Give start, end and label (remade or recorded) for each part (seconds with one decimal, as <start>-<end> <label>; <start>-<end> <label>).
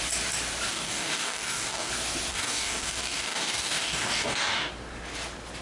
0.0-0.7 recorded; 0.7-1.9 remade; 1.9-2.3 recorded; 2.3-4.7 remade; 4.7-5.6 recorded